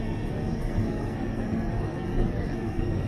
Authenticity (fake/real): fake